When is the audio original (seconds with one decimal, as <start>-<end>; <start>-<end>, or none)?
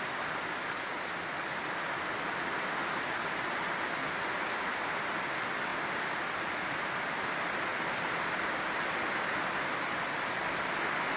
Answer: 0.0-11.2